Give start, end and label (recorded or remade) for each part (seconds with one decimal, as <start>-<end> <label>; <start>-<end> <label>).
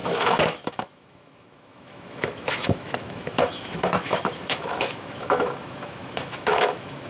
0.0-7.1 remade